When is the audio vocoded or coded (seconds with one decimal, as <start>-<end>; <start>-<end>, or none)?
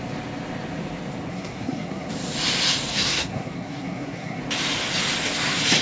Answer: 1.3-2.1; 2.9-4.4